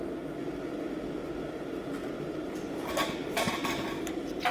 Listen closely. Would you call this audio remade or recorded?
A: recorded